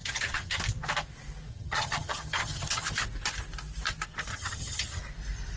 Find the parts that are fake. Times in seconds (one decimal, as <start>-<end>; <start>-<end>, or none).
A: 0.0-0.6; 1.5-2.8; 4.3-5.0